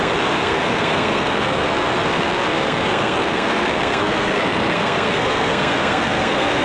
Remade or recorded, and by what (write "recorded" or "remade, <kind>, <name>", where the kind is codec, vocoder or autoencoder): remade, codec, SNAC